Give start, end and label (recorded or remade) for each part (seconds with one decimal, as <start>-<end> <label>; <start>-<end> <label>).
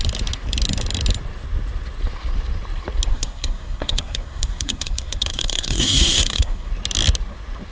0.0-3.1 recorded; 3.1-6.7 remade; 6.7-7.7 recorded